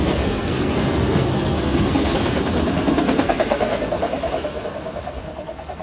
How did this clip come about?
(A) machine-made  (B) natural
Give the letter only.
A